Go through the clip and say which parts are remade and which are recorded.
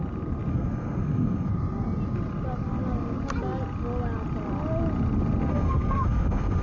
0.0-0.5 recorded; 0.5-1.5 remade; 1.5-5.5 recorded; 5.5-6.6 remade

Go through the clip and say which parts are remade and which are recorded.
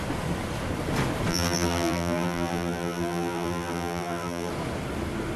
0.0-1.3 recorded; 1.3-4.5 remade; 4.5-5.4 recorded